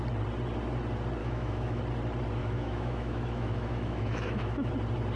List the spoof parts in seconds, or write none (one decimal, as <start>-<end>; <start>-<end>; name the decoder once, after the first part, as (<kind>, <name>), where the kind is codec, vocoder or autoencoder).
1.2-1.8 (autoencoder, DAC-VAE); 2.4-4.7